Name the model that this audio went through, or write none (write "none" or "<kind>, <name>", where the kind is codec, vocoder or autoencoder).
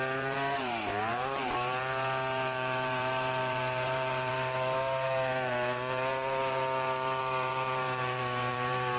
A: vocoder, BigVGAN v2